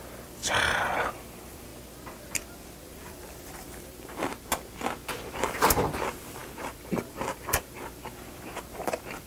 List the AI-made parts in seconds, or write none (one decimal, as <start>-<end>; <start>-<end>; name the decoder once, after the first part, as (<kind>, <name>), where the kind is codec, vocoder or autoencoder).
0.0-0.4 (vocoder, BigVGAN v2); 1.1-1.7; 2.8-4.3; 5.3-9.3